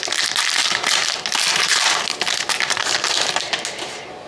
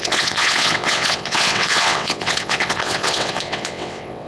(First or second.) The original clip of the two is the first